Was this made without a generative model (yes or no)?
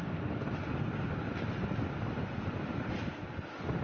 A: yes